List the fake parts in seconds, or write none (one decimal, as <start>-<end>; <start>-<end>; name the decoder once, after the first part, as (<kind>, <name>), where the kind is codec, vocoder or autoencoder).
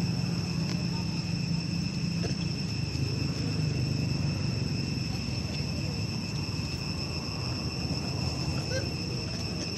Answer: 0.7-5.4 (vocoder, BigVGAN v2); 8.5-9.8